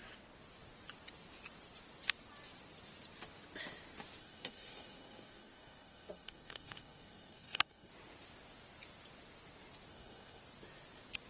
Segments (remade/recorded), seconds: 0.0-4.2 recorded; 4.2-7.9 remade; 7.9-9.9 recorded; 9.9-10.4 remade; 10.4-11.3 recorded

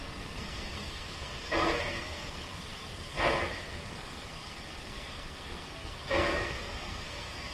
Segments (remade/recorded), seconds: 0.0-7.5 remade

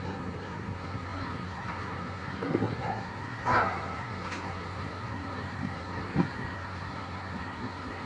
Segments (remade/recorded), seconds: 0.0-8.1 remade

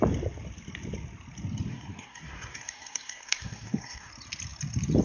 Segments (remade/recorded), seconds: 0.0-1.7 recorded; 1.7-4.1 remade; 4.1-5.0 recorded

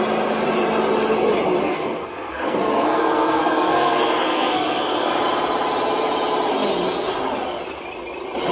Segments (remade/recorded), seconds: 0.0-1.6 recorded; 1.6-5.1 remade; 5.1-8.5 recorded

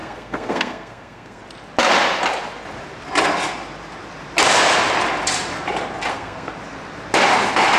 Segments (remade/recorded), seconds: 0.0-1.4 remade; 1.4-6.1 recorded; 6.1-6.5 remade; 6.5-7.8 recorded